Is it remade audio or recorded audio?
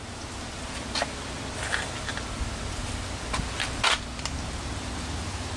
recorded